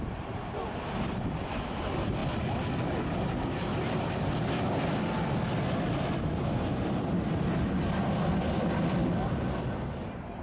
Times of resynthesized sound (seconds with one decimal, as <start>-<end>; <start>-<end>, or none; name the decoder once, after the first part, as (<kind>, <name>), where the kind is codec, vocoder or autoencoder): none